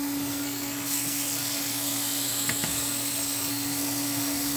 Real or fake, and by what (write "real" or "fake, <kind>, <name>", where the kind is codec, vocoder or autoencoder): fake, codec, SNAC